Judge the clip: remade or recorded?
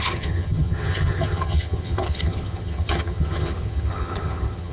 remade